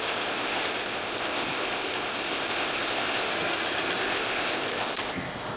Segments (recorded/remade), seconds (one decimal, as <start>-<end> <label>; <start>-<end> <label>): 0.0-3.3 remade; 3.3-4.0 recorded; 4.0-5.6 remade